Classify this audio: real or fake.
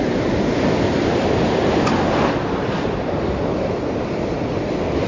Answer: real